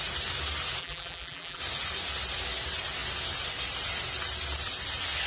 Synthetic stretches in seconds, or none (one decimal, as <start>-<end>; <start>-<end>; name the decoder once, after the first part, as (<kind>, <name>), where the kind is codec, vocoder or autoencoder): 0.8-1.6 (vocoder, BigVGAN v2)